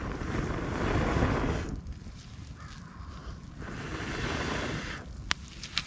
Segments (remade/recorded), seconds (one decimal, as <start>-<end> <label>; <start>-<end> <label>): 0.0-5.9 recorded